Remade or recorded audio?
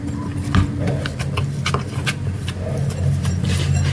recorded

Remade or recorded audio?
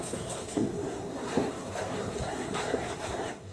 remade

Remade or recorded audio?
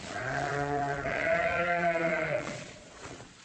remade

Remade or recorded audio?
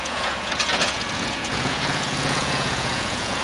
remade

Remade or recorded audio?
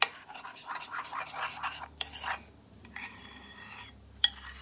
recorded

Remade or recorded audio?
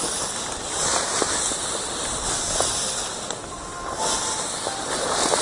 recorded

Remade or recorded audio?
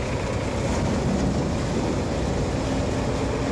recorded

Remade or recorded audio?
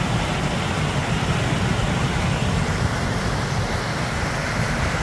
recorded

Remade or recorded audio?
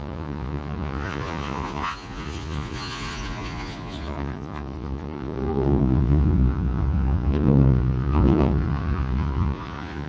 remade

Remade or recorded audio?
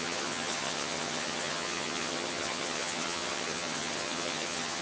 remade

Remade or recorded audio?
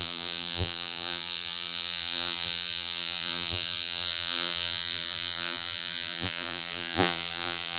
remade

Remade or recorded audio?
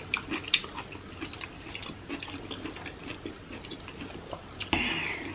recorded